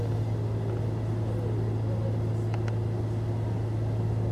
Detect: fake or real real